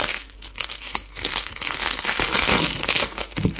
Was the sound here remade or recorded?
remade